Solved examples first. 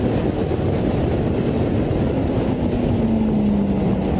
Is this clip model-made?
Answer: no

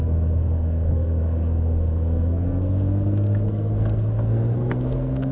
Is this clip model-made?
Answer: yes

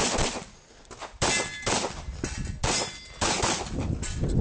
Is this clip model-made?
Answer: no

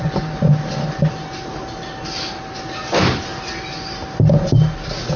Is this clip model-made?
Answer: no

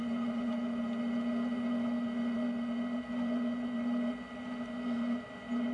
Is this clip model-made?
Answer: no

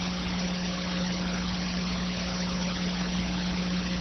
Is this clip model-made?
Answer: yes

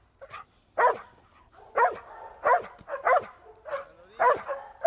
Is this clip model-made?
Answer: no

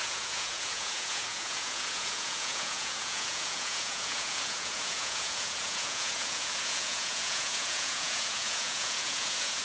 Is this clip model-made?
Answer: yes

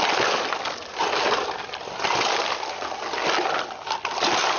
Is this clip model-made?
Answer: no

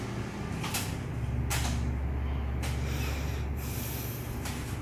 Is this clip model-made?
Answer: no